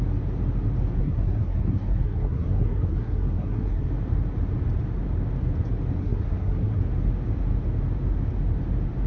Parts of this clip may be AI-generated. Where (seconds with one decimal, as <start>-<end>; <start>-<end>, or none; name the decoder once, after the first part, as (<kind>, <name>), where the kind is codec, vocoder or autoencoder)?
1.0-3.9 (codec, SNAC); 6.0-6.8